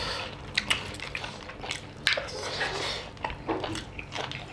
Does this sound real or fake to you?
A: real